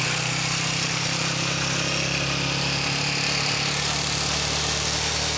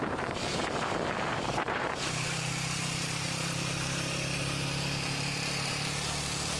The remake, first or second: second